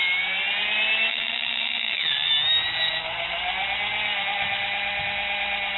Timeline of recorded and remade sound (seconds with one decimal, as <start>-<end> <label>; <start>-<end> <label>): 0.0-1.1 recorded; 1.1-2.3 remade; 2.3-5.8 recorded